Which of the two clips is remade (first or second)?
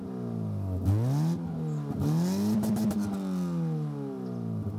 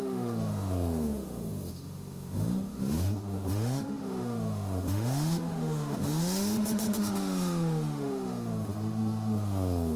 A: second